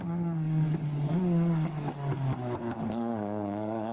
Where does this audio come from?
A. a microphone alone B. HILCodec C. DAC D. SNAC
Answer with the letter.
C